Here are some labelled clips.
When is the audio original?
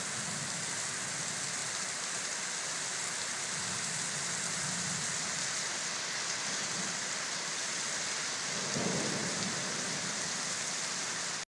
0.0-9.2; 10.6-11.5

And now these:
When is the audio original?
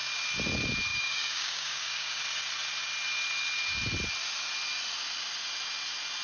0.0-0.9; 2.2-6.2